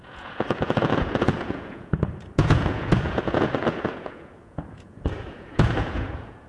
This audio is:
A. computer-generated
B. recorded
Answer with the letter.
A